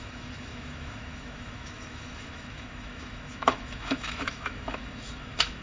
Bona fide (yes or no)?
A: no